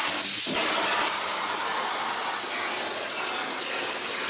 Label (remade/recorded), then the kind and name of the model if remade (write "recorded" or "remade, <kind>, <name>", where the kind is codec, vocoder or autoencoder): recorded